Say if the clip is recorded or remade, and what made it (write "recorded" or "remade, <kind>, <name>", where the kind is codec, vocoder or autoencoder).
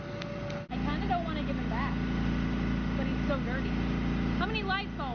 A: recorded